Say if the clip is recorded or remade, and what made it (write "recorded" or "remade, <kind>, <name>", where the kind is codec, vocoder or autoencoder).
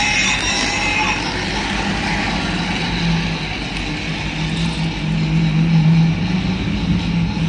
recorded